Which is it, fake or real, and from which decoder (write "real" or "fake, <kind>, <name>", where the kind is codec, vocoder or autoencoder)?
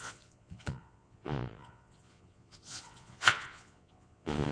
fake, vocoder, Vocos